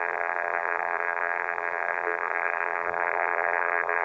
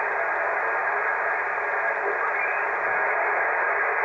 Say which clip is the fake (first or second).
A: first